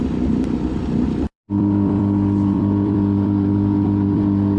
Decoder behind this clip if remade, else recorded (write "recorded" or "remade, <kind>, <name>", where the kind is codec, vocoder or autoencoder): remade, vocoder, BigVGAN v2